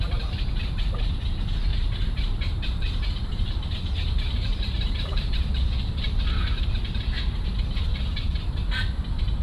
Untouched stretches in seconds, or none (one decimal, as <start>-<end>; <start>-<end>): 0.0-1.7; 6.7-9.4